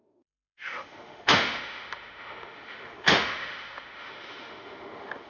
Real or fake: fake